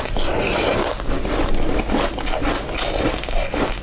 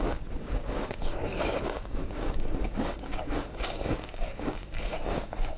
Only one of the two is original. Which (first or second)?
first